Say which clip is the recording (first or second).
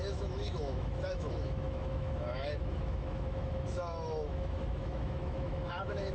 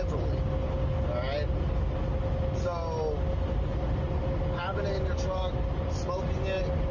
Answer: second